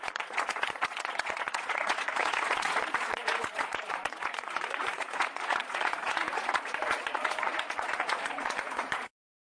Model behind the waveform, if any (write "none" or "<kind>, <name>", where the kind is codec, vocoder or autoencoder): vocoder, Vocos